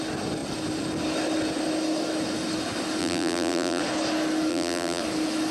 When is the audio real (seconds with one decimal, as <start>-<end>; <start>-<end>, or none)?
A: 0.0-3.0; 3.8-4.5; 5.0-5.5